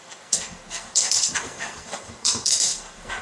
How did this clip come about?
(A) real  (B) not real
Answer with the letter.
B